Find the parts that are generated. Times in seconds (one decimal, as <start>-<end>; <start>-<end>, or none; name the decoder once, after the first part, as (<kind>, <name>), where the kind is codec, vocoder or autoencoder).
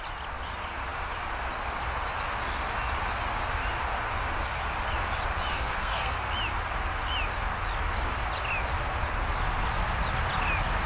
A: 5.5-6.2 (codec, SNAC)